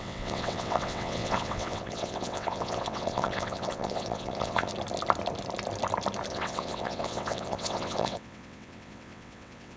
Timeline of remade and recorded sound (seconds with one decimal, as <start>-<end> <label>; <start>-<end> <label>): 0.0-4.7 remade; 4.7-6.3 recorded; 6.3-9.8 remade